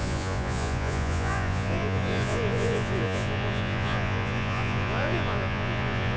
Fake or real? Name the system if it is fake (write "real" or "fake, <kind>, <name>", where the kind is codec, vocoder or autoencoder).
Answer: fake, vocoder, Vocos